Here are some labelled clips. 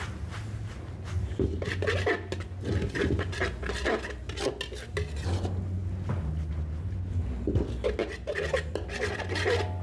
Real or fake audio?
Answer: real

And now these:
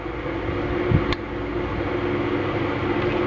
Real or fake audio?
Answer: real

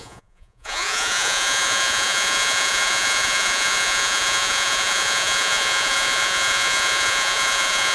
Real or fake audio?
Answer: fake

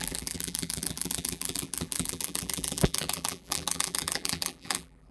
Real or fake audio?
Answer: fake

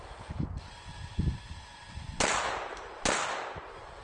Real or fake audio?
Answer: real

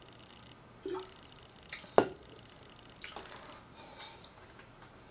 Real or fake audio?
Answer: real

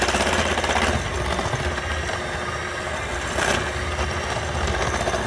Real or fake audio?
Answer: real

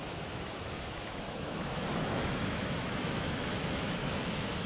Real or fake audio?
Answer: fake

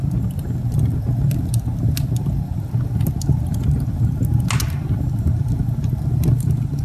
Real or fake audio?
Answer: real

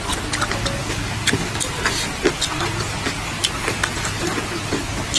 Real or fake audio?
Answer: real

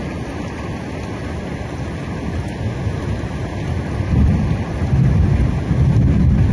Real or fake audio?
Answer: real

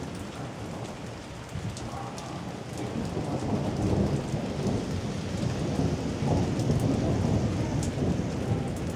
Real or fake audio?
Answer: real